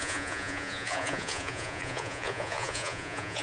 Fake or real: fake